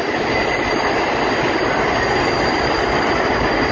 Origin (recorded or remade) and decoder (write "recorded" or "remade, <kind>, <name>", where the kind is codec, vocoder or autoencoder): recorded